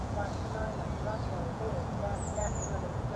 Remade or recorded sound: remade